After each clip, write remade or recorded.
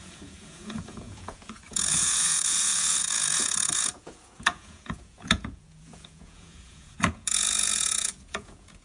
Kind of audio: remade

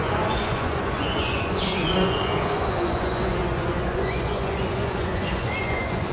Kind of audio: remade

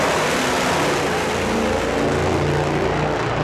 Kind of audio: recorded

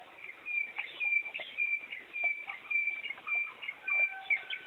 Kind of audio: recorded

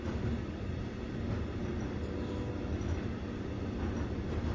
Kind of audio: recorded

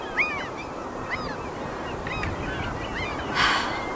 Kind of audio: recorded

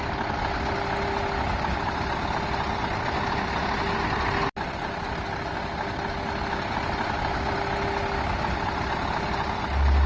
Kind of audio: recorded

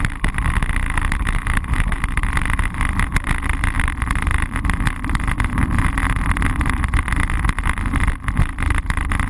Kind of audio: recorded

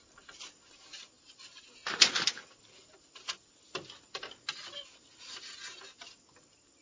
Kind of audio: recorded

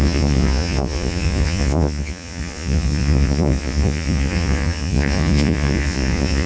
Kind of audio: remade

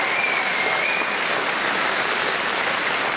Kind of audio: recorded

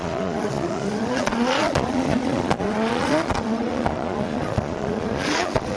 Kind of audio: remade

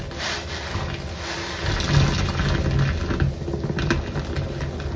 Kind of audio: recorded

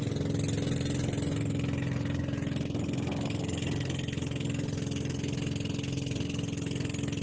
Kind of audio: recorded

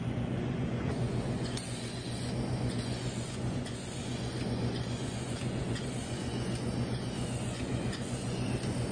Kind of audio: remade